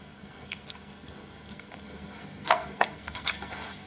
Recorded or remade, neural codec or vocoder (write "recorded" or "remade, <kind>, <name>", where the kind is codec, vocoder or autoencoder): remade, codec, SNAC